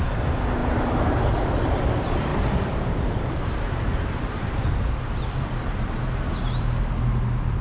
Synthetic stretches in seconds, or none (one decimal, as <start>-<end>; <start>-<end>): 2.3-6.9